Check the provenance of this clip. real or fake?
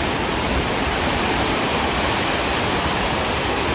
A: real